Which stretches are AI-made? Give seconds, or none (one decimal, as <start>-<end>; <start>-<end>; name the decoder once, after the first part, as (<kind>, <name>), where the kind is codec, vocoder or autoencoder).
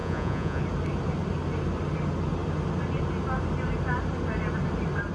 0.0-0.6 (vocoder, Vocos)